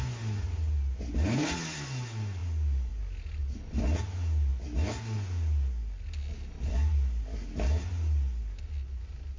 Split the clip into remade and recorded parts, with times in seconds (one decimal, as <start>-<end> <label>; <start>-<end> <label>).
0.0-9.4 recorded